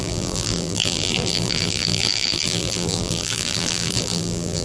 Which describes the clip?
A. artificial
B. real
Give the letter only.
A